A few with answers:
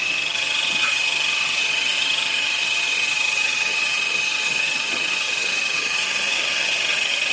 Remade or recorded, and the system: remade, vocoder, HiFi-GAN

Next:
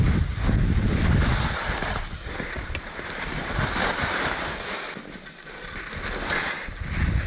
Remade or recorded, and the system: recorded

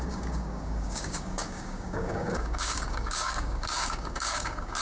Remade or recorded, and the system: remade, codec, DAC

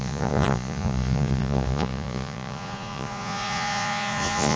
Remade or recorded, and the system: remade, vocoder, Vocos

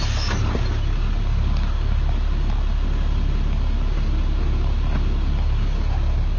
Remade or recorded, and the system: recorded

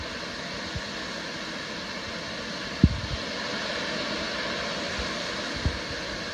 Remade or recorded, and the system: recorded